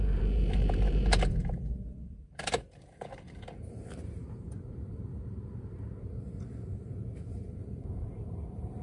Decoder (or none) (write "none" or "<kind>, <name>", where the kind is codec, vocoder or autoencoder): vocoder, BigVGAN v2